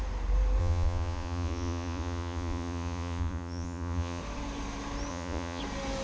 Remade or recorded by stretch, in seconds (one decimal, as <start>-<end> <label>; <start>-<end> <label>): 0.0-0.6 recorded; 0.6-4.2 remade; 4.2-5.1 recorded; 5.1-5.6 remade; 5.6-6.0 recorded